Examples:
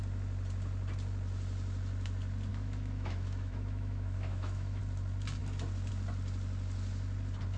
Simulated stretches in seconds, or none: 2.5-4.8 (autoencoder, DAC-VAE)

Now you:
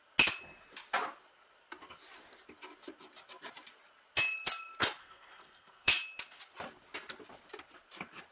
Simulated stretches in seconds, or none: 5.0-5.9 (codec, SNAC)

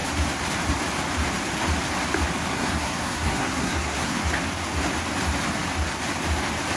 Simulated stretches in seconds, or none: 2.5-4.2 (codec, SNAC)